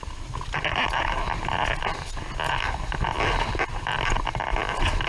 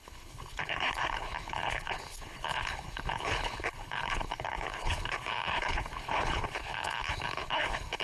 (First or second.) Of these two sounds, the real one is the first